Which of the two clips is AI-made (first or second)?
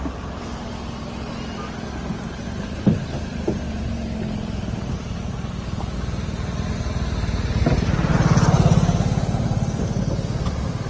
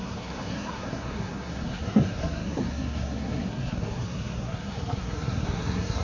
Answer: second